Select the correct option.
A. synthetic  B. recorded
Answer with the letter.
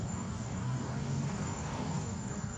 A